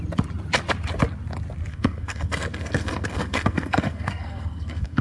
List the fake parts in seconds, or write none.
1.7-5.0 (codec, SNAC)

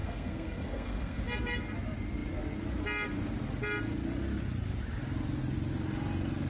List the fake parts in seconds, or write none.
0.0-1.2 (codec, SNAC)

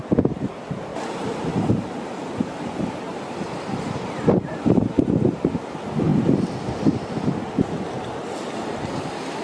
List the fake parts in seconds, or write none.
0.9-5.5 (vocoder, BigVGAN v2)

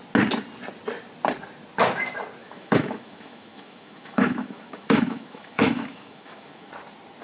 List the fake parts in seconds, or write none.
2.4-6.7 (autoencoder, DAC-VAE)

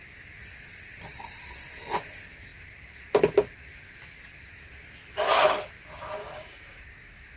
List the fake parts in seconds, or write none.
6.2-7.4 (codec, DAC)

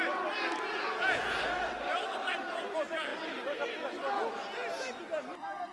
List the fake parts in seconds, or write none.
0.7-1.4 (vocoder, Vocos)

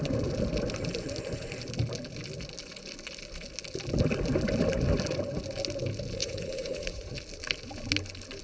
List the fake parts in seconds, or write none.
6.2-7.1 (vocoder, Vocos)